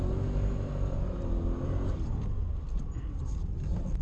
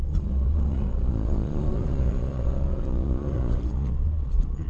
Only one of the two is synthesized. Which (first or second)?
second